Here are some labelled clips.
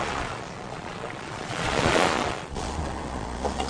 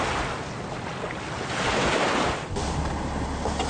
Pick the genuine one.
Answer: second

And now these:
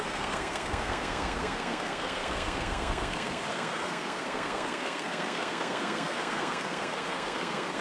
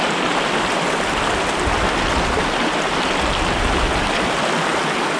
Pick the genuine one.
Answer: second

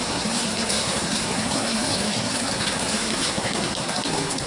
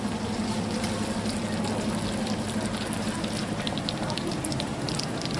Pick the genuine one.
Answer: second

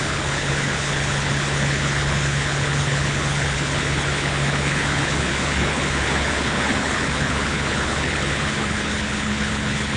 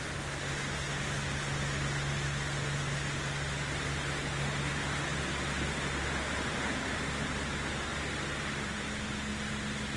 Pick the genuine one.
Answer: second